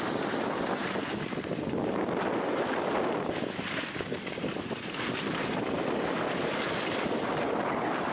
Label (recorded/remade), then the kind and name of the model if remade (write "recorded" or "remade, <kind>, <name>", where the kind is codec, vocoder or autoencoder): recorded